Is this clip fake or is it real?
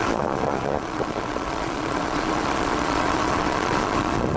fake